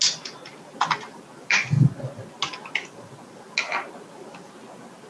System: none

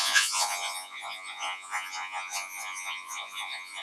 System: vocoder, Vocos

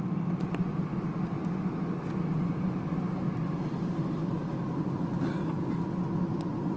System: none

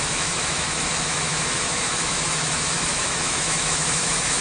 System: autoencoder, DAC-VAE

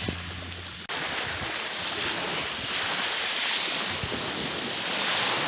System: none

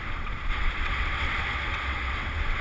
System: vocoder, WaveNeXt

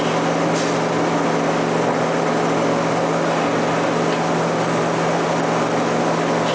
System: none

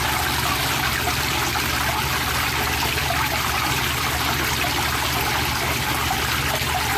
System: none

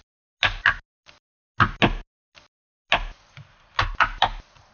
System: none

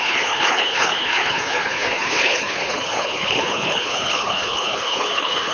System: codec, HILCodec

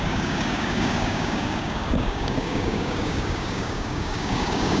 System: codec, DAC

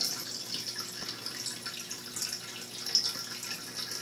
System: none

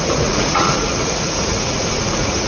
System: vocoder, Vocos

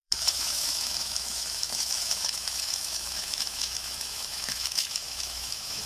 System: autoencoder, DAC-VAE